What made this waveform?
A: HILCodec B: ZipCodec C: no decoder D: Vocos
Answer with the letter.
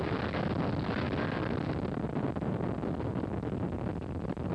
C